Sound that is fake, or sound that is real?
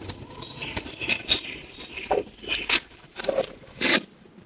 fake